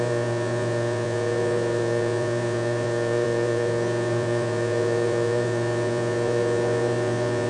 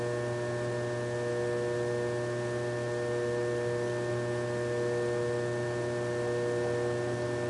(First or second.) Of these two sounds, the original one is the second